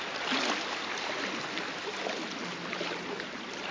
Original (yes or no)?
yes